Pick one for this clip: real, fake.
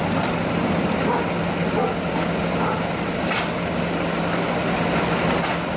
real